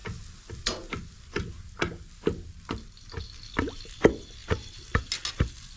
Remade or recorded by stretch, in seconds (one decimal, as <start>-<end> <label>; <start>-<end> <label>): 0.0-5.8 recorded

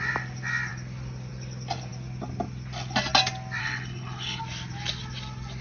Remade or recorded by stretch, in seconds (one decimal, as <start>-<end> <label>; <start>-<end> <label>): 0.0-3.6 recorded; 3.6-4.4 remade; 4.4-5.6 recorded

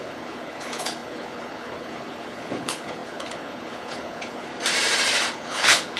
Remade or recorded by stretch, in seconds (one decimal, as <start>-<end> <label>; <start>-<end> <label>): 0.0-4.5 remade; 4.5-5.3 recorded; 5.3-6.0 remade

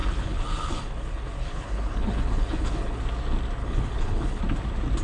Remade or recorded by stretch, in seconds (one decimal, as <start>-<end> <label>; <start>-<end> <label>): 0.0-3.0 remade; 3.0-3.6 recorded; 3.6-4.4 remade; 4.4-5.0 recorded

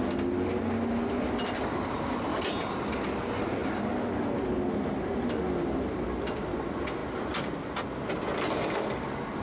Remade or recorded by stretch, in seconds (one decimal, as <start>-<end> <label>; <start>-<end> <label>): 0.0-9.4 recorded